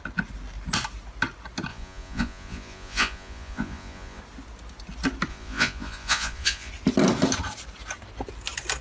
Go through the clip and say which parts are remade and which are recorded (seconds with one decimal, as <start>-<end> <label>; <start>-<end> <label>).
0.0-1.7 recorded; 1.7-4.2 remade; 4.2-5.3 recorded; 5.3-6.7 remade; 6.7-8.8 recorded